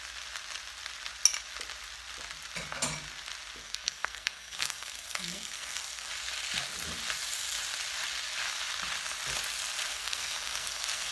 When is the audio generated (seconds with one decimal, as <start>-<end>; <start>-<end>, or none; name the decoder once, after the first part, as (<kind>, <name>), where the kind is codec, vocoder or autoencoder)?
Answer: 3.6-6.1 (codec, SNAC); 9.9-11.1